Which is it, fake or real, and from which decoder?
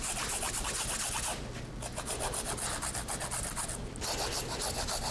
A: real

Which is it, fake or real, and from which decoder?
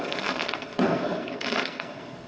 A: fake, codec, SNAC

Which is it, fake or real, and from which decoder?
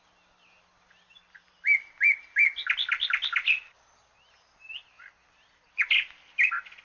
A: real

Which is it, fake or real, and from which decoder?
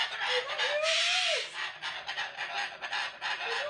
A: real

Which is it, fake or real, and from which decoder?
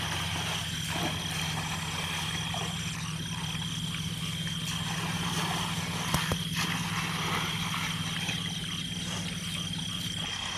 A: real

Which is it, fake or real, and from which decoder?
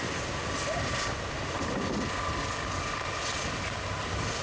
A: real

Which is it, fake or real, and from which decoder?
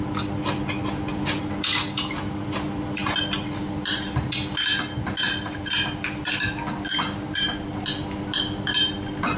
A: real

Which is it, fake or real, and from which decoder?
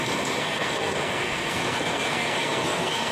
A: fake, codec, SNAC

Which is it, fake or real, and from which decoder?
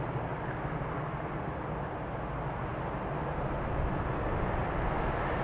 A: real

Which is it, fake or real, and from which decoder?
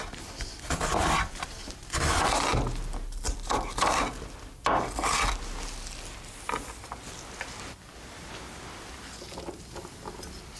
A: real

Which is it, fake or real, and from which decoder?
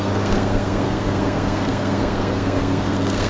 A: fake, codec, SNAC